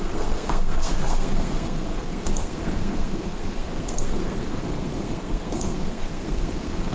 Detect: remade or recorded remade